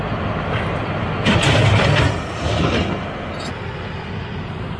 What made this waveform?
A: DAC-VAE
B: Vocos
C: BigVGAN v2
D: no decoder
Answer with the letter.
D